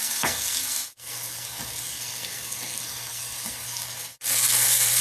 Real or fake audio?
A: fake